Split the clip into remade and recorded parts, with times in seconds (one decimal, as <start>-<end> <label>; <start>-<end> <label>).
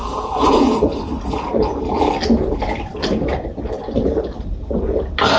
0.0-1.0 remade; 1.0-5.4 recorded